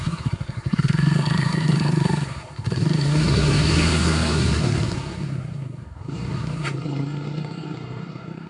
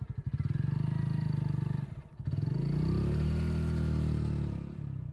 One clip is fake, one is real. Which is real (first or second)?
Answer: second